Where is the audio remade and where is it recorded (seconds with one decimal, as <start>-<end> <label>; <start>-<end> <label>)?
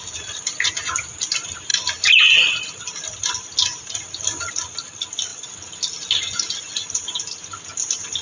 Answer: 0.0-8.2 recorded